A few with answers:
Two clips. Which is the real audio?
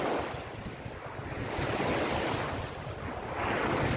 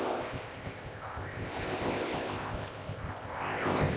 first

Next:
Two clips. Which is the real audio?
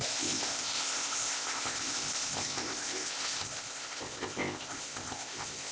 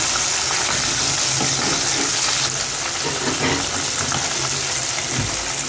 second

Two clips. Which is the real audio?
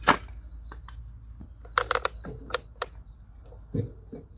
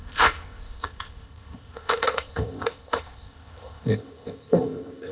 first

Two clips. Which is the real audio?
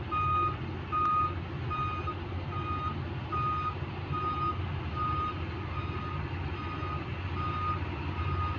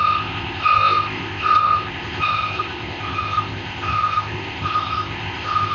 first